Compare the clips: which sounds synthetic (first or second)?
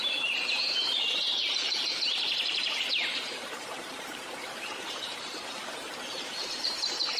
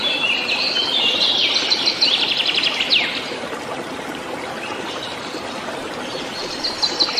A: first